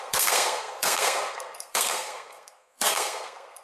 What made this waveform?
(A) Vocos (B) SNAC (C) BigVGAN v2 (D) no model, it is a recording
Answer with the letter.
B